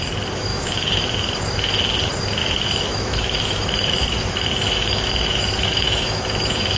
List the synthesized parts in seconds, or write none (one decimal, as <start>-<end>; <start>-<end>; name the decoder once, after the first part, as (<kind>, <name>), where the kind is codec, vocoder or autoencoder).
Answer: 0.5-1.0 (autoencoder, DAC-VAE); 2.4-6.8